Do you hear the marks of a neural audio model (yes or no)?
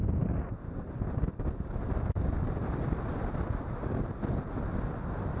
no